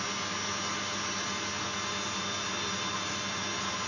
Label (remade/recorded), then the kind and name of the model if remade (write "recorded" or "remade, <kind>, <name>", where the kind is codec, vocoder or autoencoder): recorded